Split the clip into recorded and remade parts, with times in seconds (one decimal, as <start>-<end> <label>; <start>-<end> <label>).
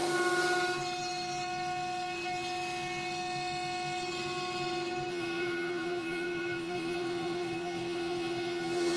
0.0-5.1 recorded; 5.1-9.0 remade